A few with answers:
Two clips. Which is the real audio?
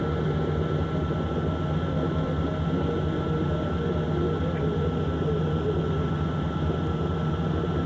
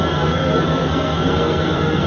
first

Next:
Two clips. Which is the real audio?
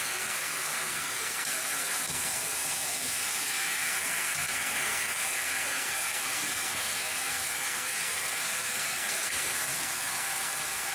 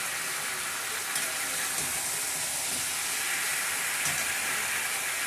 second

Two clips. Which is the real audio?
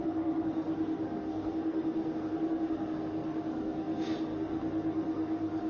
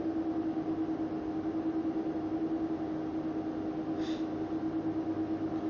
second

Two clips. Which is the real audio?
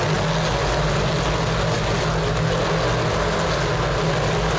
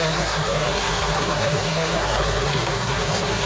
first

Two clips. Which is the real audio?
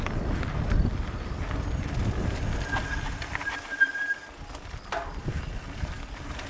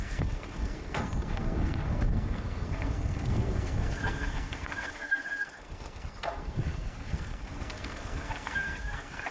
first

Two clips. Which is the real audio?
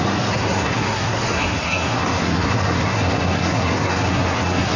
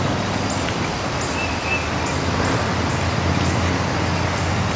second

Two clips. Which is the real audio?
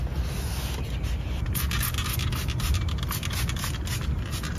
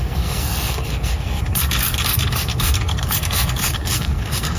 first